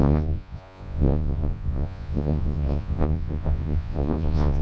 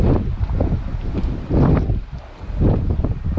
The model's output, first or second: first